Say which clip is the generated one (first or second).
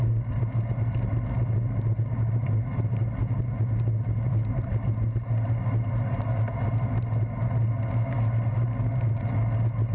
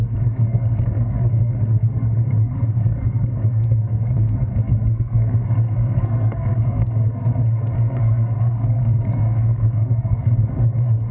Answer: second